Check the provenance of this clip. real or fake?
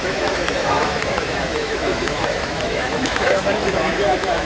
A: fake